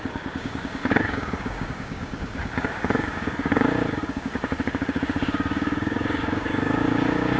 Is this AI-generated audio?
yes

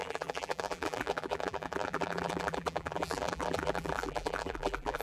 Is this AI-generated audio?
yes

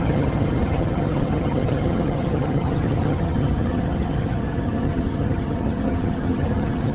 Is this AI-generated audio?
yes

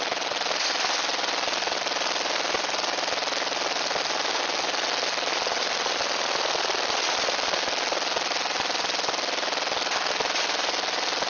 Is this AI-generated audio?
no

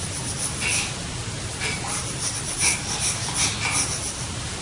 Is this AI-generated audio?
no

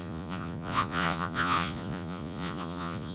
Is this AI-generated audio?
yes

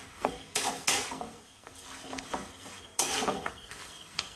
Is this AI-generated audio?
yes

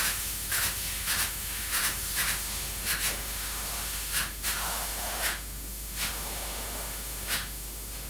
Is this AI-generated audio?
yes